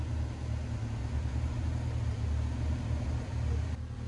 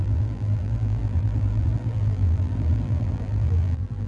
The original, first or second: first